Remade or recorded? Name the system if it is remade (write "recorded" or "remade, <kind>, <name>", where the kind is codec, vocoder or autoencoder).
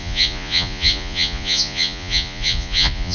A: remade, vocoder, Vocos